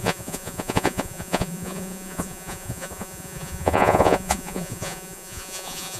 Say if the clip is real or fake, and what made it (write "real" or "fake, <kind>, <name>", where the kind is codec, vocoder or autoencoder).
fake, vocoder, Vocos